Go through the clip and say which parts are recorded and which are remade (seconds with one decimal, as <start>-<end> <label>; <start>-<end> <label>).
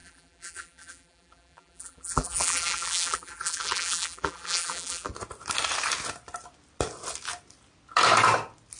0.0-5.1 remade; 5.1-8.8 recorded